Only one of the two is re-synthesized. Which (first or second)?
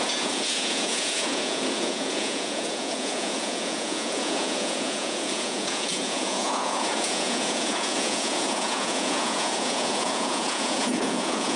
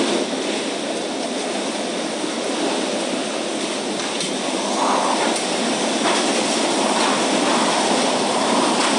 first